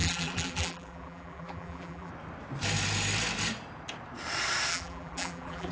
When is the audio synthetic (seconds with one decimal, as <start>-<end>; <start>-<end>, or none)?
0.0-2.1; 4.7-5.7